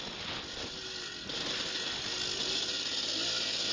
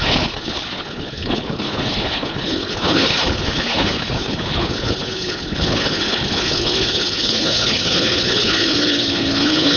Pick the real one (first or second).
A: first